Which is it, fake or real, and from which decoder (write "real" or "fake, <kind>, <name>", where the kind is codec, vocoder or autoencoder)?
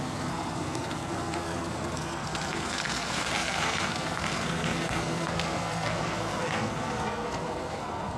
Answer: fake, codec, SNAC